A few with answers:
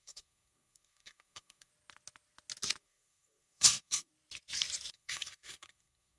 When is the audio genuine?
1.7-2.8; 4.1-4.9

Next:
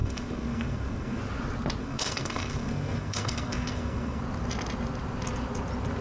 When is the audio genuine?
1.2-1.8; 4.2-6.0